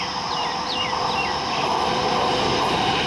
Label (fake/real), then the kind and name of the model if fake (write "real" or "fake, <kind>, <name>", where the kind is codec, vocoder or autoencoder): real